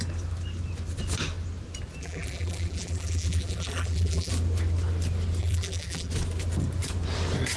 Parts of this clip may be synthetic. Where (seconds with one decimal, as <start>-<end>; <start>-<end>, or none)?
2.0-4.3; 5.4-6.1